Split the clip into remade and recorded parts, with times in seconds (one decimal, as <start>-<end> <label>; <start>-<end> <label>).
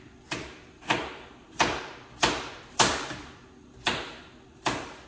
0.0-5.1 recorded